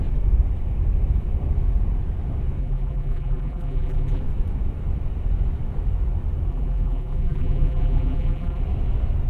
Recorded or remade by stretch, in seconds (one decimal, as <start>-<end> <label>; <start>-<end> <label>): 0.0-2.6 recorded; 2.6-4.2 remade; 4.2-6.5 recorded; 6.5-8.6 remade; 8.6-9.3 recorded